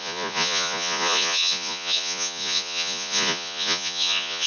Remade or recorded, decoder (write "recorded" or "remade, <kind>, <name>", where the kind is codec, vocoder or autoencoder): remade, vocoder, Vocos